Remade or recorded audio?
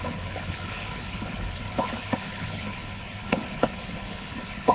remade